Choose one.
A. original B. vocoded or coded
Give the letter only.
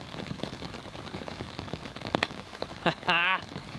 B